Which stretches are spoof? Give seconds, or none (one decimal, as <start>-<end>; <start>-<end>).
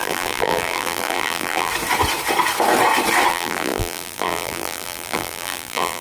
0.0-1.7; 3.3-6.0